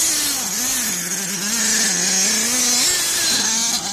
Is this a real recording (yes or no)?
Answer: yes